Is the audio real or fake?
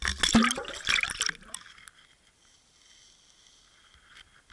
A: real